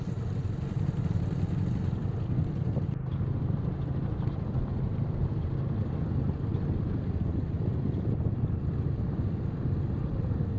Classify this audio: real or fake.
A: real